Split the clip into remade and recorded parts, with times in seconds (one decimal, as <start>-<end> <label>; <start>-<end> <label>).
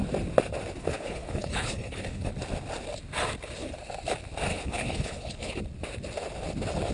0.0-0.8 recorded; 0.8-2.3 remade; 2.3-4.5 recorded; 4.5-5.6 remade; 5.6-6.9 recorded